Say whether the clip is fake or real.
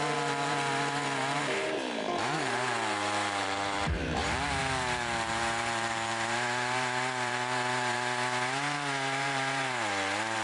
fake